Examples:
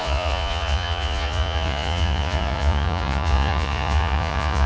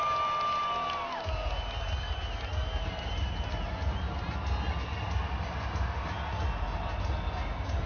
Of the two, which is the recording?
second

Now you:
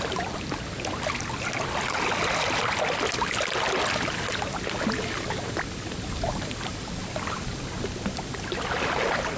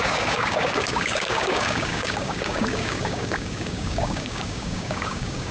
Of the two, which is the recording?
first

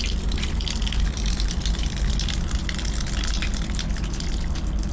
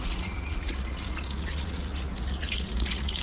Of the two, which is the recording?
first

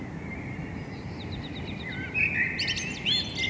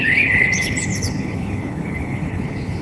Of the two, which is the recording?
first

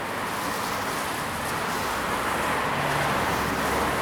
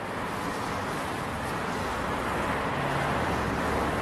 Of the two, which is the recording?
first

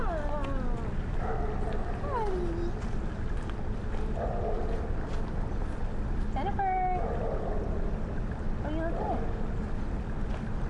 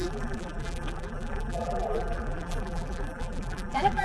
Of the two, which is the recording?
first